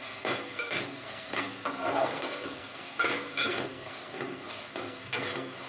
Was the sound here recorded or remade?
remade